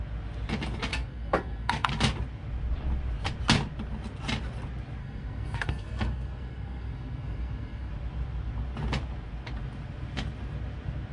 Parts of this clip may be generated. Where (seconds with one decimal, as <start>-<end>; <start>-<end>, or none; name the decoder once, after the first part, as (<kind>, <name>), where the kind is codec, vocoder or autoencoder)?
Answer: 0.9-1.9 (codec, SNAC); 5.0-7.9

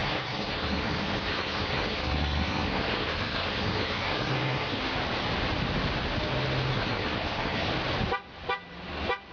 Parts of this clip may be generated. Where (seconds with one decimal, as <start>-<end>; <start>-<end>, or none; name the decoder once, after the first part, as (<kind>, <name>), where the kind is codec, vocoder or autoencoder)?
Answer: 0.0-4.8 (codec, SNAC); 6.7-7.7

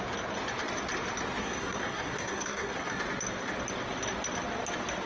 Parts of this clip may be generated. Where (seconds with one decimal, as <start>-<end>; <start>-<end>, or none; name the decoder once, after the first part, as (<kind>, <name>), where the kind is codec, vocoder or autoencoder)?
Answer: 1.4-3.0 (codec, SNAC)

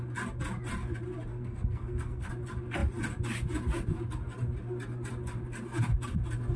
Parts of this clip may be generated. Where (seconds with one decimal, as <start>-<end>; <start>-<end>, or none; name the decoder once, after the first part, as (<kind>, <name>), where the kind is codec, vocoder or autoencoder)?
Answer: 1.3-2.3 (codec, SNAC)

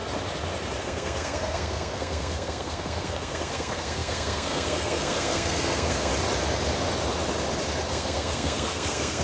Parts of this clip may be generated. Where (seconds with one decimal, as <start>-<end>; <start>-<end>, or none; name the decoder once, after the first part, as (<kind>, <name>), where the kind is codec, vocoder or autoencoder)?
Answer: 0.8-6.1 (codec, SNAC); 7.9-9.2

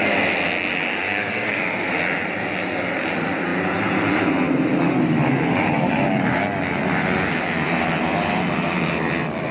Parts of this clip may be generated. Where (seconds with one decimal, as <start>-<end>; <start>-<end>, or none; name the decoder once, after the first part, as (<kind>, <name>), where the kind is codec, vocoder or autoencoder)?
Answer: 0.9-1.9 (codec, SNAC)

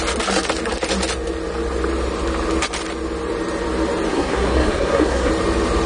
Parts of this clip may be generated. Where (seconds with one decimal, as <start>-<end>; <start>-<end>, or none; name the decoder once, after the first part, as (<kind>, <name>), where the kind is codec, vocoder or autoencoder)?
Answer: 4.1-5.3 (codec, SNAC)

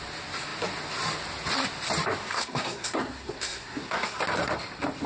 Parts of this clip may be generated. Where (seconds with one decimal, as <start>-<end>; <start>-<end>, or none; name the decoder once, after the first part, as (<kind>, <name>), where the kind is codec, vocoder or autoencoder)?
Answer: 2.2-4.2 (codec, SNAC)